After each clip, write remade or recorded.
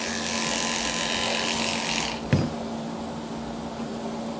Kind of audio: recorded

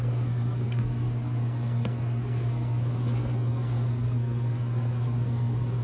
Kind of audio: remade